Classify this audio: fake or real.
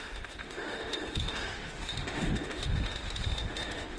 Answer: fake